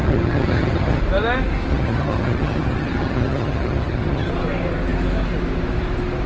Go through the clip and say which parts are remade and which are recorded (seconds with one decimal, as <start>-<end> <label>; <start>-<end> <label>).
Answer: 0.0-1.0 remade; 1.0-1.7 recorded; 1.7-4.3 remade; 4.3-6.3 recorded